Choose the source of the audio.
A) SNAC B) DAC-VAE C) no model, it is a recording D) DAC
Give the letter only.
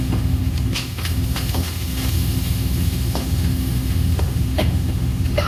B